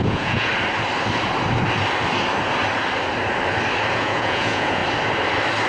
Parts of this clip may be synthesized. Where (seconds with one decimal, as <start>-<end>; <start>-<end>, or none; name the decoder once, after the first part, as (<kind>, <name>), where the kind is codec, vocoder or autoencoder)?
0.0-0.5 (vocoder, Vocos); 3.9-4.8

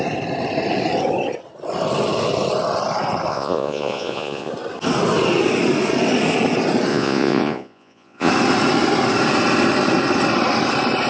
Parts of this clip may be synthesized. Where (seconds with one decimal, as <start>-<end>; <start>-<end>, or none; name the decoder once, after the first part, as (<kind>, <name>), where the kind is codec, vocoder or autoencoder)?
3.3-4.5 (vocoder, Vocos); 6.9-8.3

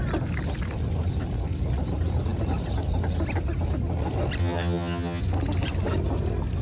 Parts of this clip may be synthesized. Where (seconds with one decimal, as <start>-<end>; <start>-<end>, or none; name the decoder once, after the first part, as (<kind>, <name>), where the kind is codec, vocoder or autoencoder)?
4.4-5.2 (vocoder, HiFi-GAN)